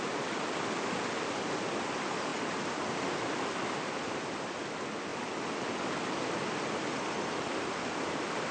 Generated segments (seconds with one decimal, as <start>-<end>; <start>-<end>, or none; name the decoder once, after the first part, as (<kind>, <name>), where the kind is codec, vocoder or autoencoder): none